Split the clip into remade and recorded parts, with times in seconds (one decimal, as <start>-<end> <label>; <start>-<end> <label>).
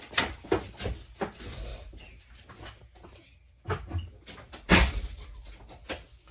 0.0-6.3 recorded